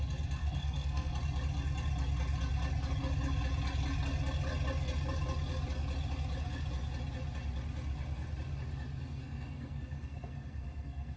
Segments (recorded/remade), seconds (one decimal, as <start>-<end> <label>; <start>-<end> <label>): 0.0-0.4 recorded; 0.4-1.1 remade; 1.1-9.0 recorded; 9.0-11.2 remade